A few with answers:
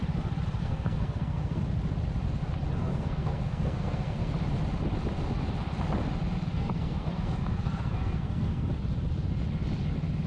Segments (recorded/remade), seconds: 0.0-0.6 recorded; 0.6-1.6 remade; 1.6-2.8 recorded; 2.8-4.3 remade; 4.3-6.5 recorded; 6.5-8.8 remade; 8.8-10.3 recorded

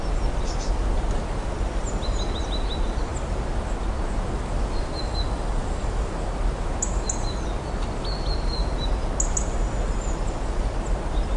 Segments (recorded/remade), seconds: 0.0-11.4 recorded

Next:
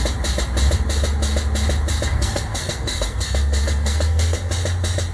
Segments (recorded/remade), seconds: 0.0-2.1 recorded; 2.1-4.5 remade; 4.5-5.1 recorded